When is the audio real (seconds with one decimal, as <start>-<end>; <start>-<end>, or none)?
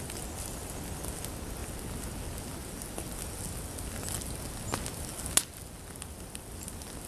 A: 0.0-7.1